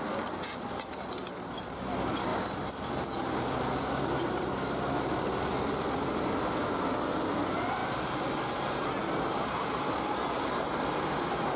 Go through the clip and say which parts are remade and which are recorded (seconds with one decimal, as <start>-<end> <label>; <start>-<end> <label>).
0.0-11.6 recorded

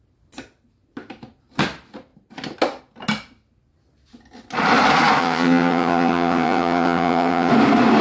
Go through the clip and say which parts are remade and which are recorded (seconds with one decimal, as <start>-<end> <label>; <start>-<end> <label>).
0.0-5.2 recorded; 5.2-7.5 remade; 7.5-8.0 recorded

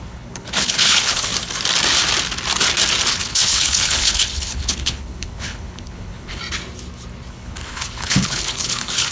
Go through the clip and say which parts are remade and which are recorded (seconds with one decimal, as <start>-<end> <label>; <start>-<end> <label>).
0.0-1.3 remade; 1.3-3.1 recorded; 3.1-6.4 remade; 6.4-7.3 recorded; 7.3-9.1 remade

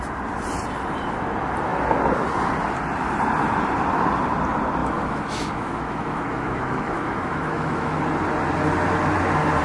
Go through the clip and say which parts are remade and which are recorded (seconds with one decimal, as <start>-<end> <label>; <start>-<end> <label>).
0.0-4.8 recorded; 4.8-8.0 remade; 8.0-9.6 recorded